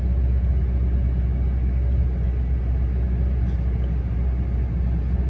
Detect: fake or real real